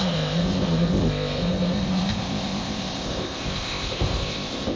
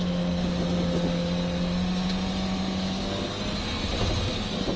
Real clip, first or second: second